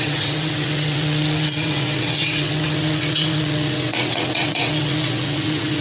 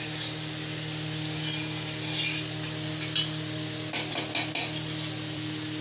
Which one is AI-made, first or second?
first